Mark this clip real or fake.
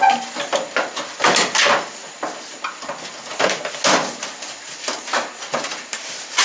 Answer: real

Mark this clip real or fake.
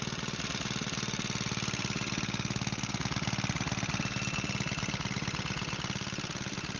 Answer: real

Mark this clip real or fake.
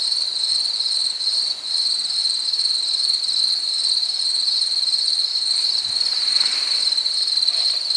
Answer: real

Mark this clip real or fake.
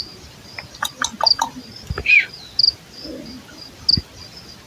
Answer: real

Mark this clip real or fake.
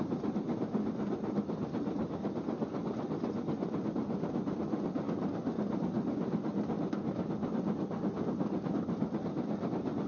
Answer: real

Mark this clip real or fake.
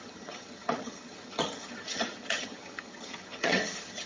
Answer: fake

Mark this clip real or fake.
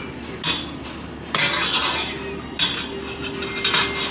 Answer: real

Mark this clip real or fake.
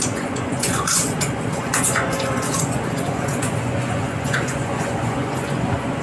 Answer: fake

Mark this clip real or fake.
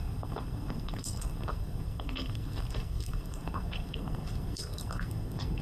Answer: fake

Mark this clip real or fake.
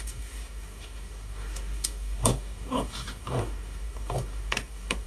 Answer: fake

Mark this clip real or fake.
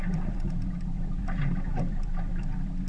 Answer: fake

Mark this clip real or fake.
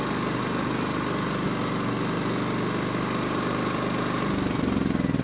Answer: real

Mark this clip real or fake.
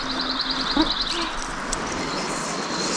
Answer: real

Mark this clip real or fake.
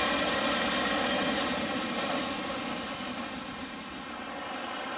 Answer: real